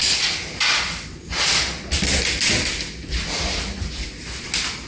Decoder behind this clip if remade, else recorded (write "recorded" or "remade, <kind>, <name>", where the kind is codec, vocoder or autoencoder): recorded